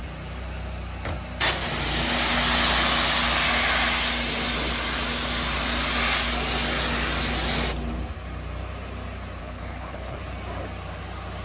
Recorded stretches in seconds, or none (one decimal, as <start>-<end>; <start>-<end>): 0.0-9.4; 10.2-11.4